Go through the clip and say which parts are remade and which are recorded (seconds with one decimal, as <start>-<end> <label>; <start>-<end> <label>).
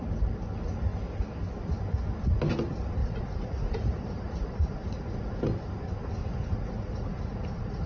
0.0-3.0 recorded; 3.0-5.4 remade; 5.4-6.2 recorded; 6.2-7.9 remade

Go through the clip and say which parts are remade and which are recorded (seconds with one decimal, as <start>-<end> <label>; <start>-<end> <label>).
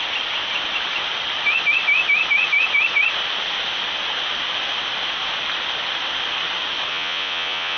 0.0-6.9 recorded; 6.9-7.8 remade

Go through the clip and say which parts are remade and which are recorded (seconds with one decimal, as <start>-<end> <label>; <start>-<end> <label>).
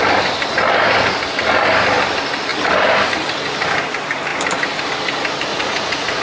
0.0-5.5 recorded; 5.5-6.2 remade